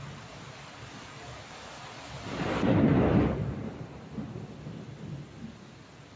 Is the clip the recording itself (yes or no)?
yes